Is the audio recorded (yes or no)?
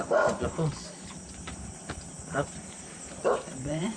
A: no